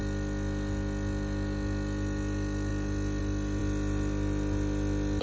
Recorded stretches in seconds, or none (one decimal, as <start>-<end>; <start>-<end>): 0.0-5.2